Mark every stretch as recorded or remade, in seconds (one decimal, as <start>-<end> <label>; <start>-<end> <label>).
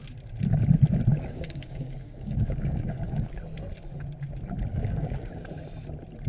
0.0-1.1 recorded; 1.1-3.4 remade; 3.4-4.7 recorded; 4.7-5.5 remade; 5.5-6.3 recorded